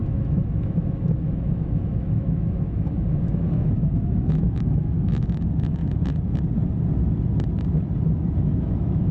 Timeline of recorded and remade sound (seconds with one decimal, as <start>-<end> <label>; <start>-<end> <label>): 0.0-5.8 remade; 5.8-8.4 recorded; 8.4-9.1 remade